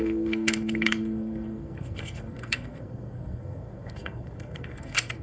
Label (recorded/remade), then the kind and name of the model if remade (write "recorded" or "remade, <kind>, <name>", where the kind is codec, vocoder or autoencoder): remade, codec, SNAC